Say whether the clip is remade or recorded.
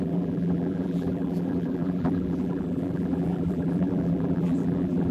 remade